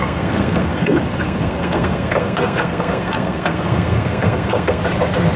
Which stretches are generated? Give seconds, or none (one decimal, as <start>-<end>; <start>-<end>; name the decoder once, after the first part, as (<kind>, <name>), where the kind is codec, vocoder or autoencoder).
0.0-4.8 (codec, SNAC)